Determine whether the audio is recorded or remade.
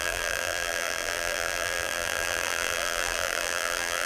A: remade